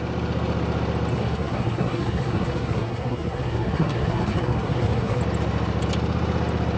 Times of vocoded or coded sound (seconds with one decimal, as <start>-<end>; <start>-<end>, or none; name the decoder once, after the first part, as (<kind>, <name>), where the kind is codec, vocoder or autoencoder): 1.1-5.2 (codec, SNAC)